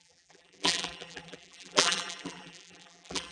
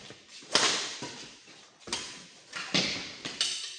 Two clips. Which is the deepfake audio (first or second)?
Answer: first